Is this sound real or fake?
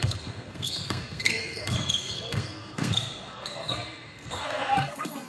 fake